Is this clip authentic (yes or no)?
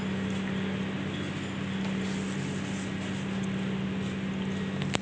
yes